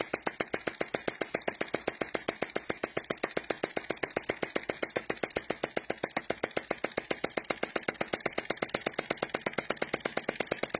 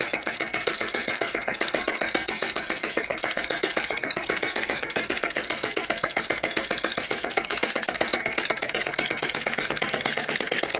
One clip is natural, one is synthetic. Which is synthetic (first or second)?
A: second